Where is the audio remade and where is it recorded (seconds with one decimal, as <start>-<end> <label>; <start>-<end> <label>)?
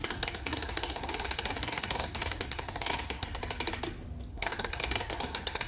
0.0-3.4 remade; 3.4-4.3 recorded; 4.3-5.7 remade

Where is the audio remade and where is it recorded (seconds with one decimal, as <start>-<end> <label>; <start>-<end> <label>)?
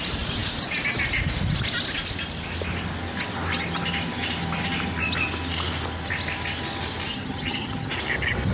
0.0-7.1 recorded; 7.1-7.9 remade; 7.9-8.5 recorded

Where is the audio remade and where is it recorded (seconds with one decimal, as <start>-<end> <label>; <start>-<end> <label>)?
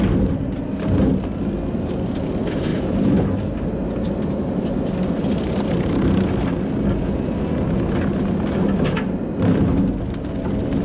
0.0-10.8 recorded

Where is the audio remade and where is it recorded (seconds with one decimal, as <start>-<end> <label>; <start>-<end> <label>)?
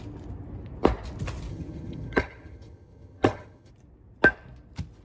0.0-1.5 recorded; 1.5-3.7 remade; 3.7-5.0 recorded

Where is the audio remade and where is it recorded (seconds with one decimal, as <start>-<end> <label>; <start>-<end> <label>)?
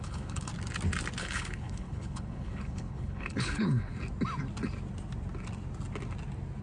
0.0-0.5 remade; 0.5-1.2 recorded; 1.2-3.9 remade; 3.9-6.6 recorded